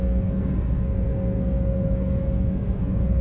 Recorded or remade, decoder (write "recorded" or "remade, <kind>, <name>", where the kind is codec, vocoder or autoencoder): remade, codec, SNAC